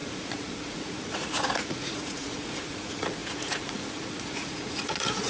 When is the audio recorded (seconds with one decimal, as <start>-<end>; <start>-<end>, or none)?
none

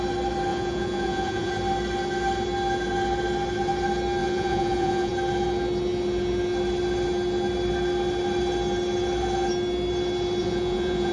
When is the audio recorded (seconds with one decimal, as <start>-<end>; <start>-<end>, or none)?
0.0-0.5; 1.5-4.2; 5.1-10.4

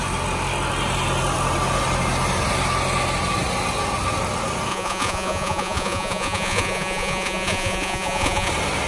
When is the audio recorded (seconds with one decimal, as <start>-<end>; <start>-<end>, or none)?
0.0-4.7; 8.5-8.9

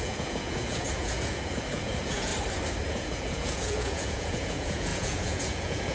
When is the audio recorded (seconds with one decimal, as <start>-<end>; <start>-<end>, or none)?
2.3-2.9

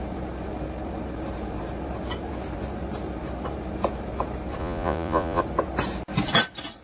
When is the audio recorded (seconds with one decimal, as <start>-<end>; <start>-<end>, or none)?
0.0-4.6; 5.4-6.8

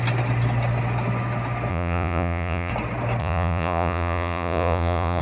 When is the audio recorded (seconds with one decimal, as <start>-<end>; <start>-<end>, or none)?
0.0-1.7; 2.7-3.2

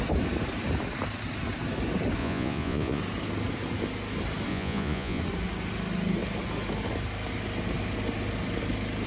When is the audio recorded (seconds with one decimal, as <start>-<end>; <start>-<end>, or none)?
0.0-2.2; 3.0-4.5; 5.2-9.1